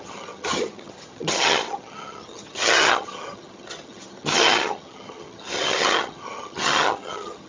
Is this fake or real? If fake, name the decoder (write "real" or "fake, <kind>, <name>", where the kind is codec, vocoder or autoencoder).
fake, vocoder, HiFi-GAN